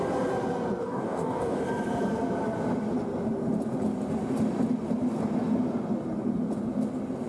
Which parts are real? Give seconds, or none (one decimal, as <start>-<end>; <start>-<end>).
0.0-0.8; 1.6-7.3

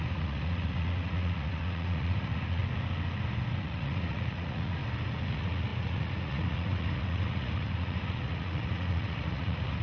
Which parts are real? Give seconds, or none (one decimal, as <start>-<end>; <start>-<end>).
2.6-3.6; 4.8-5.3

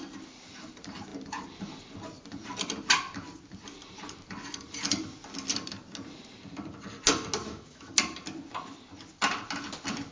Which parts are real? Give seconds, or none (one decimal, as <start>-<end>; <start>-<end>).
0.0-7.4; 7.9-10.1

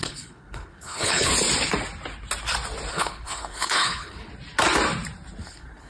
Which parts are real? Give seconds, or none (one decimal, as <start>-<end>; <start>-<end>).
1.3-2.9; 4.3-5.4

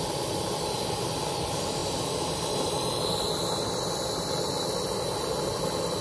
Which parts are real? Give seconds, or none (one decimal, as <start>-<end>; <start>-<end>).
0.0-6.0